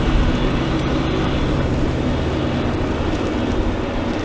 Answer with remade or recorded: recorded